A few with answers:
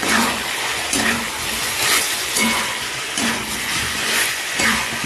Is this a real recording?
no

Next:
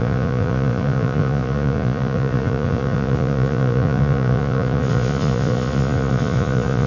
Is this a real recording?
no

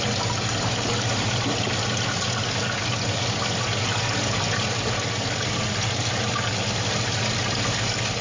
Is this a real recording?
yes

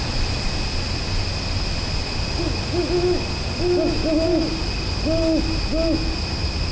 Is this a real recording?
yes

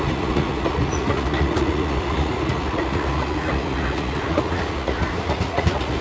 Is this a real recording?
no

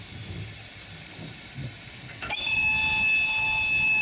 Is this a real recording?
yes